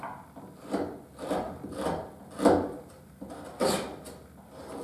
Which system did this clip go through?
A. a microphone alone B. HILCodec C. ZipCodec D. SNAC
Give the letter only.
A